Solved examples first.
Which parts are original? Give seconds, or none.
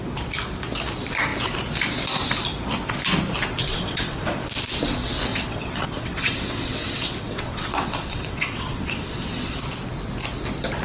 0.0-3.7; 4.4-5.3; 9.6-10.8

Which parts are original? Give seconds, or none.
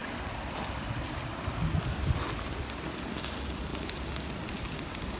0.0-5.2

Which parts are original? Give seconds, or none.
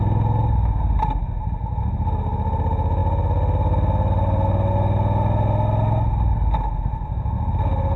0.0-8.0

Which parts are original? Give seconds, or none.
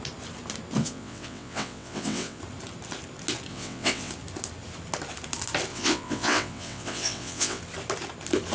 0.0-0.8; 2.4-3.5; 4.1-5.7; 7.6-8.5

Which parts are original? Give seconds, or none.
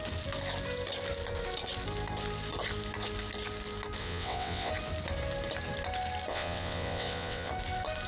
0.0-4.0; 4.7-6.3; 7.5-8.1